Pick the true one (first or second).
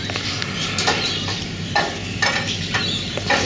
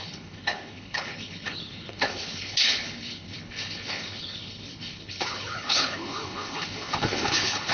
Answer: first